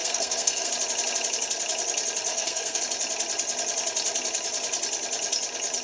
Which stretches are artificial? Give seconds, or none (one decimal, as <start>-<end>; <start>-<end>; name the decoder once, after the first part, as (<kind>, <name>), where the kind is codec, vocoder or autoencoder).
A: 0.0-0.7 (codec, SNAC); 2.3-2.8